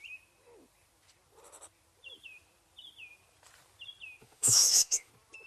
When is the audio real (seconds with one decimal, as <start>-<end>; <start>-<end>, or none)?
0.0-4.2; 5.1-5.5